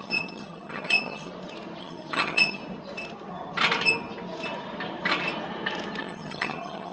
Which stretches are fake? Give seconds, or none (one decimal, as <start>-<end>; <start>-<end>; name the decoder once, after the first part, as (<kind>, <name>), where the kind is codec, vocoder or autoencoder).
0.0-1.3 (vocoder, HiFi-GAN); 1.8-2.6; 6.0-6.9